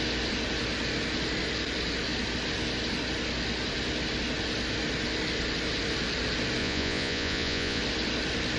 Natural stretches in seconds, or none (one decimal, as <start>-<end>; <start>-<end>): 0.0-6.6; 7.8-8.6